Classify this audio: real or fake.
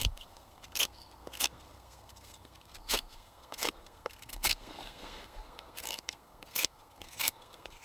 fake